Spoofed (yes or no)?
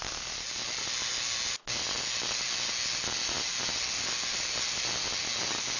no